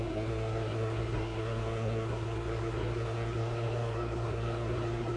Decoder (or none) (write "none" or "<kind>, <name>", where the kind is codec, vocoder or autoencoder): codec, SNAC